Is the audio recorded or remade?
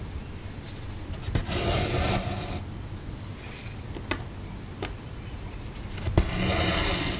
recorded